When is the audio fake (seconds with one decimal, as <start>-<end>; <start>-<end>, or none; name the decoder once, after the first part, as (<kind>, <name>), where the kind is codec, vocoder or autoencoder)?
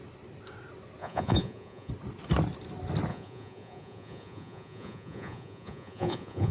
1.0-1.9 (vocoder, Vocos); 3.1-6.5